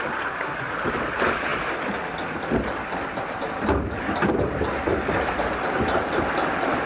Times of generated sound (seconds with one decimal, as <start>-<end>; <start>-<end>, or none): none